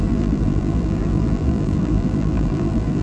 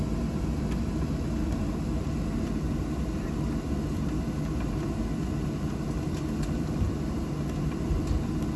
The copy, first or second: first